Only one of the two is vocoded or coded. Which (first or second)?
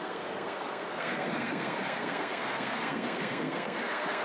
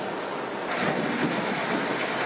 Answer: first